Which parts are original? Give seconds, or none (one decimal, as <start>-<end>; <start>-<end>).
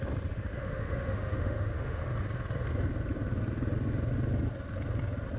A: 0.0-0.5; 2.0-5.4